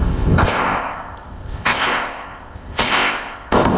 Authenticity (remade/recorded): remade